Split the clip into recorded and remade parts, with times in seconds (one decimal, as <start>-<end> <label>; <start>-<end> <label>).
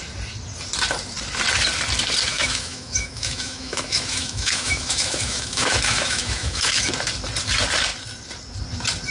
0.0-2.3 recorded; 2.3-6.9 remade; 6.9-9.1 recorded